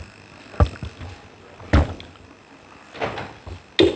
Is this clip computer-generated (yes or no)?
no